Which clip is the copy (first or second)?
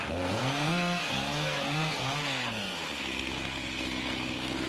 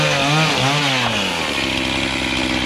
first